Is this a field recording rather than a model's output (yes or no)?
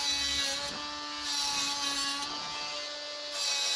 yes